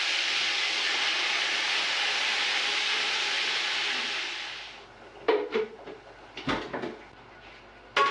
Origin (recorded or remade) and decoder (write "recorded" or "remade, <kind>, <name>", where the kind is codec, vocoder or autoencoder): recorded